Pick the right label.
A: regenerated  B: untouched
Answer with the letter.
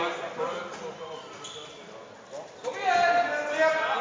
B